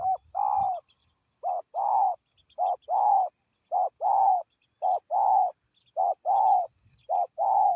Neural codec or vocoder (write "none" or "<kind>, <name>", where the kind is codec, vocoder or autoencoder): none